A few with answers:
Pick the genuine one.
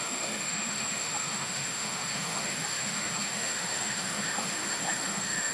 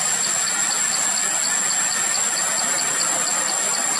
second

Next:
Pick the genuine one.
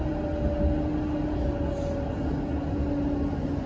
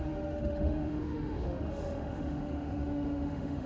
first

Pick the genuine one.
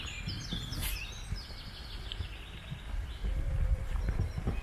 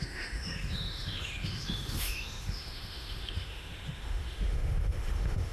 first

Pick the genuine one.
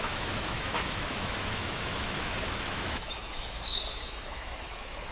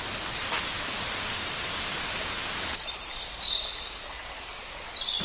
second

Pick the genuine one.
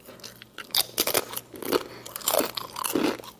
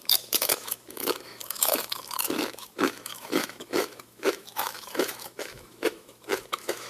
first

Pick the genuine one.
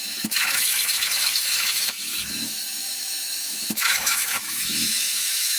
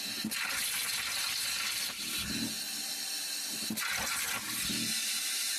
second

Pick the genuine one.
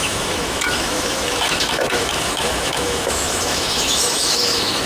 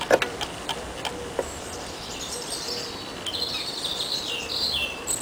second